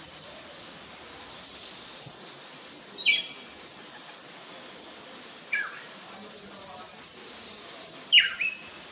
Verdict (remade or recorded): recorded